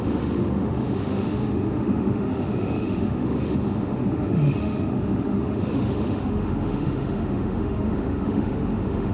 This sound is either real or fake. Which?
fake